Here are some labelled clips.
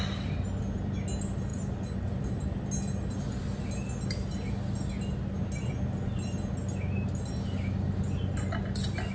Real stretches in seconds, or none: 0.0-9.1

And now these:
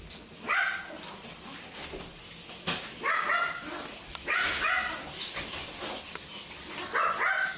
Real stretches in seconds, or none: 0.0-7.6

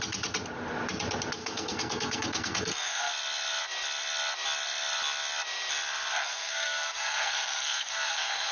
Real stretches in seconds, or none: 0.0-1.4; 3.1-6.2